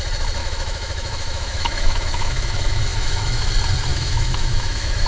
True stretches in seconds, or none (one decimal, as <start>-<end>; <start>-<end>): 0.0-0.4; 3.5-3.9